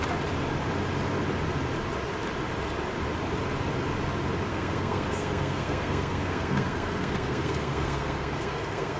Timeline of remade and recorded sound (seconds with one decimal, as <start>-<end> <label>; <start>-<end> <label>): 0.0-4.5 recorded; 4.5-9.0 remade